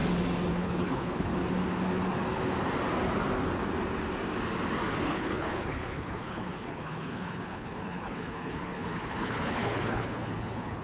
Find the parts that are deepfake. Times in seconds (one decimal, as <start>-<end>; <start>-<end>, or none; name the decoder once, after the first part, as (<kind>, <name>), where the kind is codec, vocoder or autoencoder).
0.5-1.3 (codec, HILCodec); 5.0-10.8